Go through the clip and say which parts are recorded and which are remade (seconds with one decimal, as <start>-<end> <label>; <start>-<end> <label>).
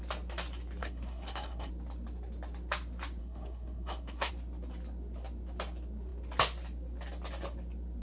0.0-0.8 recorded; 0.8-1.7 remade; 1.7-3.2 recorded; 3.2-4.3 remade; 4.3-8.0 recorded